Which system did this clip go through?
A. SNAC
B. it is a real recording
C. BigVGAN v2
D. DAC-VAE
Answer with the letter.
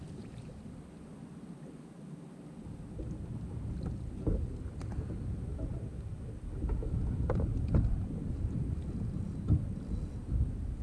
B